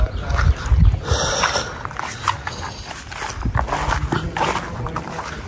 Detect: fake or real real